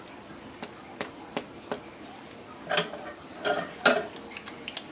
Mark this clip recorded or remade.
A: recorded